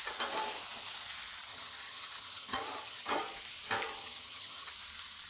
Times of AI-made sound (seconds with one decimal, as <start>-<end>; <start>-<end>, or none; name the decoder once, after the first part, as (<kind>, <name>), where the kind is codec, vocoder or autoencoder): 1.5-3.2 (vocoder, HiFi-GAN); 4.0-4.7

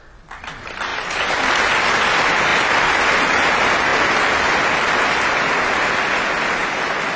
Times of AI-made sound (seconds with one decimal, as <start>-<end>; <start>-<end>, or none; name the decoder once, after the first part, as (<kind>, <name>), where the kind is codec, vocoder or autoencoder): none